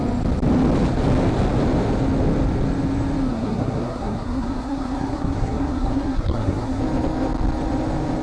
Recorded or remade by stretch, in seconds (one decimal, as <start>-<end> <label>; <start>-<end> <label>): 0.0-3.3 recorded; 3.3-6.8 remade; 6.8-8.2 recorded